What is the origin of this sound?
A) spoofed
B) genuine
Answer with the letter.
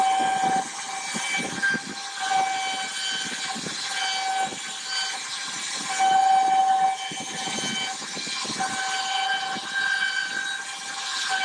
B